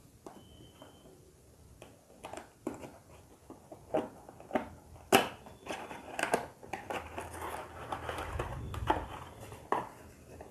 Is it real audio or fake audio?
real